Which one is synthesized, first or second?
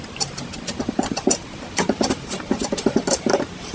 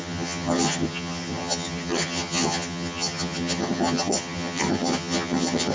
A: second